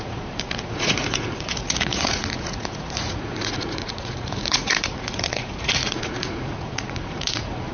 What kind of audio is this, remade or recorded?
remade